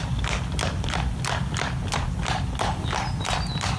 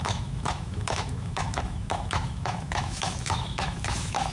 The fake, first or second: second